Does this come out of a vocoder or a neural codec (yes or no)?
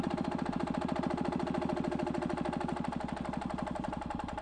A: no